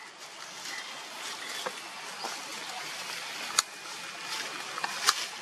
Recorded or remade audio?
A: recorded